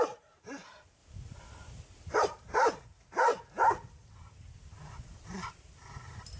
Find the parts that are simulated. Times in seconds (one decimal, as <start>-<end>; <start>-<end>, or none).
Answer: 0.0-1.0; 2.2-3.3; 4.6-6.4